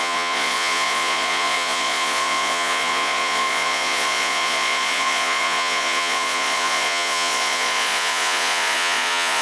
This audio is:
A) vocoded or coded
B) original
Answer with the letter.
A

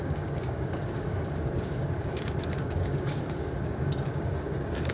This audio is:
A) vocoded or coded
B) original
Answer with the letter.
A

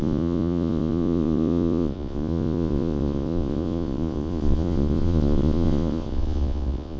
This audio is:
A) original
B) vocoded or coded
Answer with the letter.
B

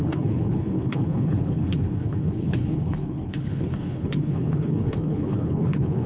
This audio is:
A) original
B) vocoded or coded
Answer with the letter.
B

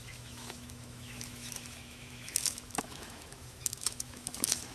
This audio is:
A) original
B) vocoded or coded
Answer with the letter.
B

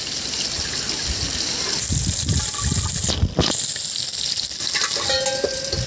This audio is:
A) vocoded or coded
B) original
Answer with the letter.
B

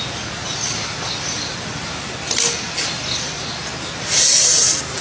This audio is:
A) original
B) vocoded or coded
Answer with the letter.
A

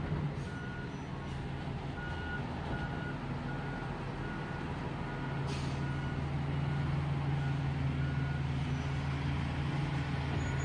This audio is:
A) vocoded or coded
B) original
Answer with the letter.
B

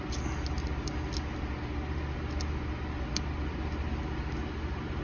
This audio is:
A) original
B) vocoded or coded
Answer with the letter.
A